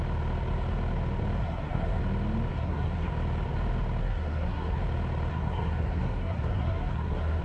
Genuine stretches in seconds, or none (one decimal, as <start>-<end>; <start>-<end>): 0.0-1.4; 2.0-2.5; 3.1-4.0; 4.8-5.3